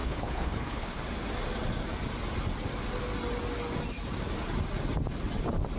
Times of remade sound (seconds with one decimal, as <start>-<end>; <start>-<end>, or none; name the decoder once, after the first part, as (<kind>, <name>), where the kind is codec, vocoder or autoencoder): 0.0-1.0 (codec, HILCodec)